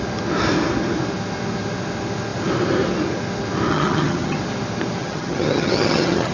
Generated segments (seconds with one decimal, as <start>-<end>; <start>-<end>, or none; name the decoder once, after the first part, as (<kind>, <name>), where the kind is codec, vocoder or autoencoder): 3.7-4.4 (vocoder, HiFi-GAN); 5.0-6.3